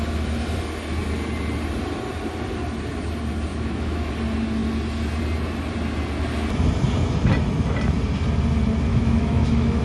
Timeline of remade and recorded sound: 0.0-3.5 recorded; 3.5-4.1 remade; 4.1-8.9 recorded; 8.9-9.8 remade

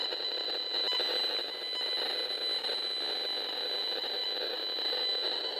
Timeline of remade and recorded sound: 0.0-5.6 recorded

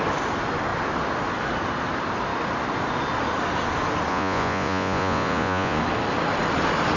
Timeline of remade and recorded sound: 0.0-4.1 recorded; 4.1-5.8 remade; 5.8-7.0 recorded

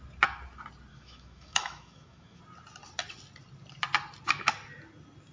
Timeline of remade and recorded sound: 0.0-0.9 recorded; 0.9-2.4 remade; 2.4-5.3 recorded